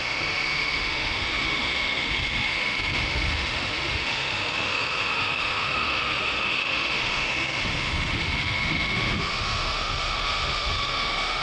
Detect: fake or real fake